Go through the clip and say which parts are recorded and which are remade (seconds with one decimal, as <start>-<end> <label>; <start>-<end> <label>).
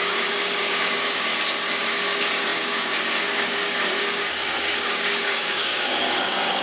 0.0-1.3 remade; 1.3-1.8 recorded; 1.8-6.6 remade